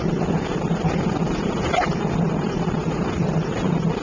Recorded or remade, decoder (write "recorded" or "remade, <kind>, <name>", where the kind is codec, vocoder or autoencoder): recorded